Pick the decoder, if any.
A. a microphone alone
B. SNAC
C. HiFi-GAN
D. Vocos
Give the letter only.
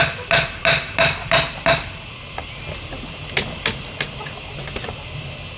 A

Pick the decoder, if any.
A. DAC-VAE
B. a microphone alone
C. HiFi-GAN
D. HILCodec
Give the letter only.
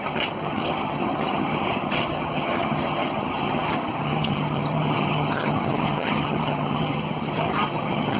C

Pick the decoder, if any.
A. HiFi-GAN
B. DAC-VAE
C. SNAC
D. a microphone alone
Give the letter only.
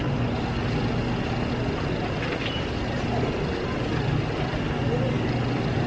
D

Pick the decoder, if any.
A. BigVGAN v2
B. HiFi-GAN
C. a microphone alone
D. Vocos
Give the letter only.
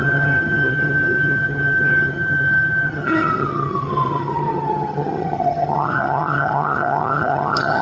B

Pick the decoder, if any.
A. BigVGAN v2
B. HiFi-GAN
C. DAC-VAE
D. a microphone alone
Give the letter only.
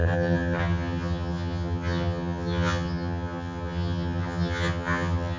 B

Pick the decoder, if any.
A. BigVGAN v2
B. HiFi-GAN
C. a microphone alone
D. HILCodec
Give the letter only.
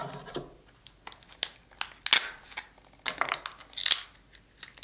C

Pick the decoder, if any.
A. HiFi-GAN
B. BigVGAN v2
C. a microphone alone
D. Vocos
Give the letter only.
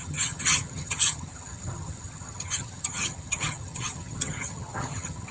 A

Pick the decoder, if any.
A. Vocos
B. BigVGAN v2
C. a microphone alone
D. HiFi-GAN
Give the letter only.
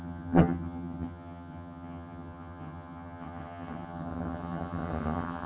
D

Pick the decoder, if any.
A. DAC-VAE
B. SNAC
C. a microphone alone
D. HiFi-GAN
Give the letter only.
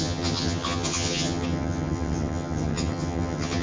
D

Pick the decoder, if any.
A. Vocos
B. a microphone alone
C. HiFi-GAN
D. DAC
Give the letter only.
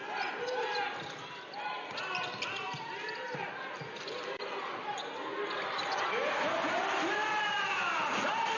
B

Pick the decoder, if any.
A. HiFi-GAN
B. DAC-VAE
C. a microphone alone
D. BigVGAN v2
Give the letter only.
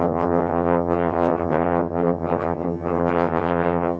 A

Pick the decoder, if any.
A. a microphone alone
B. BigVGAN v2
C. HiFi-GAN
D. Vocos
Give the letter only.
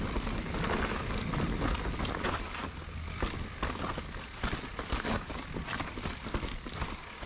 A